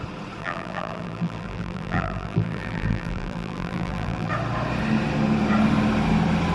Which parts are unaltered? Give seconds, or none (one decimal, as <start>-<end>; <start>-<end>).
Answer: 0.0-0.4; 4.3-6.5